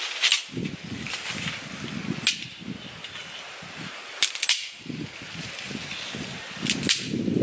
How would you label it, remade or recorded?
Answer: recorded